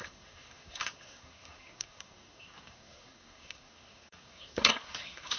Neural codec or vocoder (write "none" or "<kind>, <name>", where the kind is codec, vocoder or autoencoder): codec, SNAC